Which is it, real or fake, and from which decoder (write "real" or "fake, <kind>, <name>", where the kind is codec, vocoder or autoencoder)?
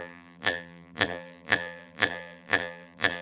fake, vocoder, BigVGAN v2